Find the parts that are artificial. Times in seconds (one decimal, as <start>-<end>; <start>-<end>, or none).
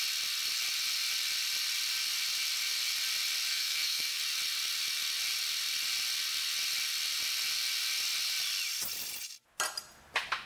3.5-4.2